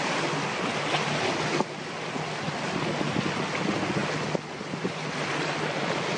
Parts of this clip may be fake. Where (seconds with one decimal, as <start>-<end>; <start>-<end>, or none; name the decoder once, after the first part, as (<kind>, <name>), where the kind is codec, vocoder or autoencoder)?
none